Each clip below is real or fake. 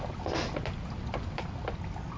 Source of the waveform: real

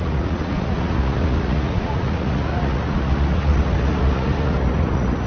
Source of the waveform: fake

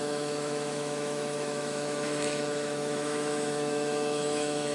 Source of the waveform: fake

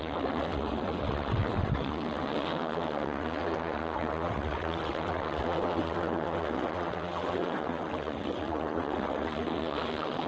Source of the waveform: fake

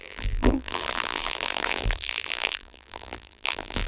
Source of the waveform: fake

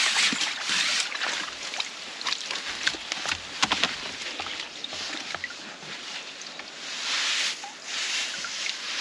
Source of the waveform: real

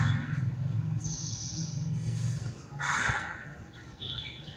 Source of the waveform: fake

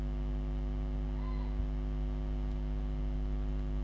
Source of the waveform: real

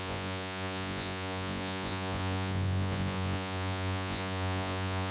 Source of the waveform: fake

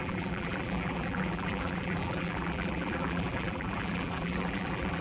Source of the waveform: fake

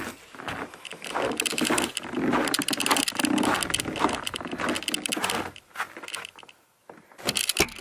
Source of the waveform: real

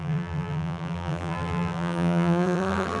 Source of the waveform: fake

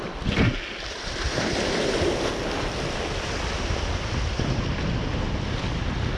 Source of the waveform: real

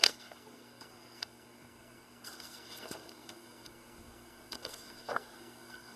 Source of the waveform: fake